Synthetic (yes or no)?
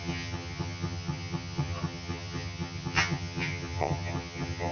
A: yes